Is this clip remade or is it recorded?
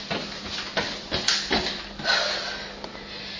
recorded